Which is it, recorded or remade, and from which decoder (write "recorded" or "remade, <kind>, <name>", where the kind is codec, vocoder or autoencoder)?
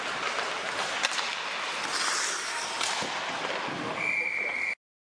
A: recorded